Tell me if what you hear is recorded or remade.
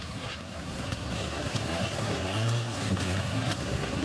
remade